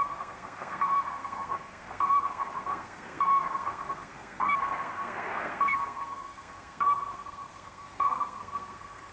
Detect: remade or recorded remade